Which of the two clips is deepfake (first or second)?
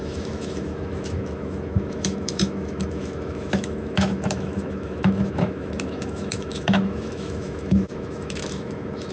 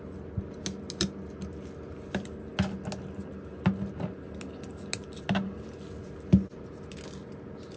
first